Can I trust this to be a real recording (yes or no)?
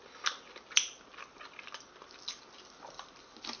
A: yes